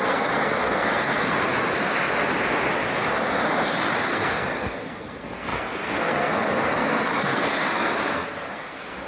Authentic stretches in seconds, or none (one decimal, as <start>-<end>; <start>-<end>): 1.5-4.0